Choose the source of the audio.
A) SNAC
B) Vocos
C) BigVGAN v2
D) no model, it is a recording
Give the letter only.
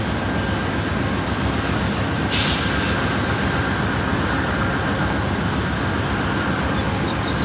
D